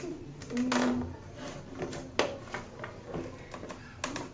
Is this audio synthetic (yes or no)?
no